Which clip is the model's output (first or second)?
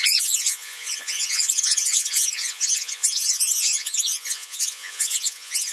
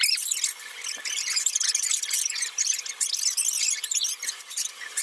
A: first